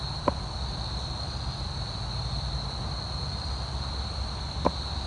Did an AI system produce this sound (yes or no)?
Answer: no